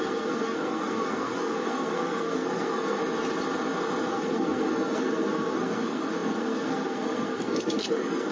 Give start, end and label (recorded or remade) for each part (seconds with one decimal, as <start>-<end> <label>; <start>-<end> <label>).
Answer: 0.0-3.0 remade; 3.0-4.1 recorded; 4.1-8.3 remade